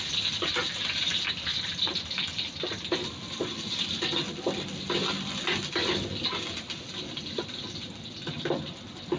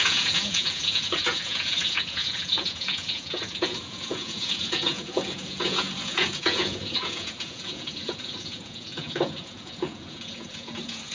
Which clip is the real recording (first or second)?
first